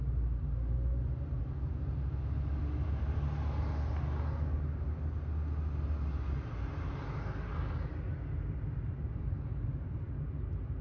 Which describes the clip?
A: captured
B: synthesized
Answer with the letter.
A